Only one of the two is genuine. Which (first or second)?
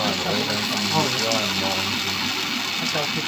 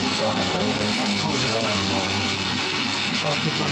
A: first